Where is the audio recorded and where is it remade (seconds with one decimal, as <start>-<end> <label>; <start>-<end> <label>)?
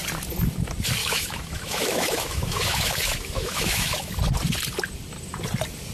0.0-1.0 recorded; 1.0-4.1 remade; 4.1-5.9 recorded